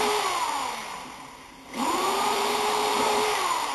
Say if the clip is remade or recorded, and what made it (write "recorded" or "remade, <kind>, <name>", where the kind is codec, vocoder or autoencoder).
remade, vocoder, BigVGAN v2